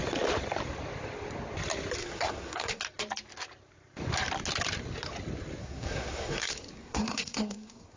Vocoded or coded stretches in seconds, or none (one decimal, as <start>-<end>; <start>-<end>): 2.0-2.8; 5.6-8.0